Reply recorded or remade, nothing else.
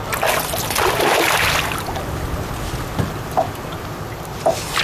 recorded